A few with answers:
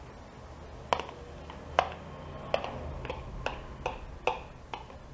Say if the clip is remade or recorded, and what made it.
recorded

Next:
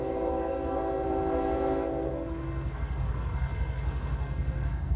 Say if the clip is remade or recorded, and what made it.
remade, codec, SNAC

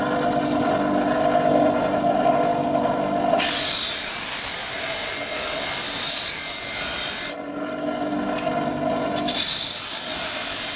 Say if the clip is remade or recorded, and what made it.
recorded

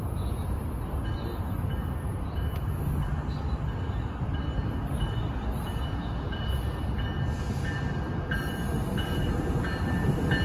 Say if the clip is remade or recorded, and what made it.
recorded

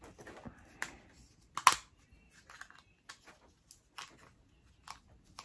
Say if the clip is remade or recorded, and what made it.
recorded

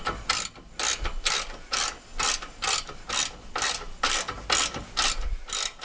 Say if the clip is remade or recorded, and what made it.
recorded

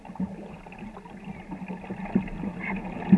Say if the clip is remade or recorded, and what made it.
recorded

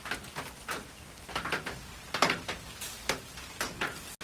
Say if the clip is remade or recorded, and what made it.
recorded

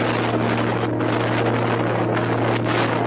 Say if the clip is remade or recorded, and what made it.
recorded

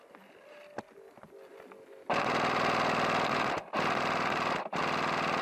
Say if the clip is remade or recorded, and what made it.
recorded